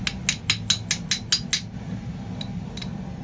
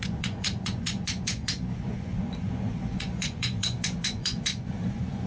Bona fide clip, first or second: first